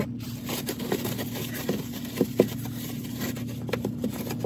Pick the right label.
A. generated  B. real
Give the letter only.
B